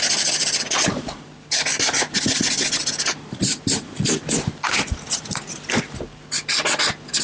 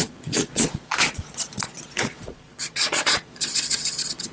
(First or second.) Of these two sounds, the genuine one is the first